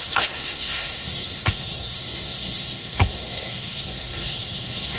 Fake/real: fake